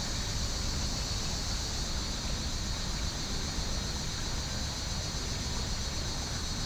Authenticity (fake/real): real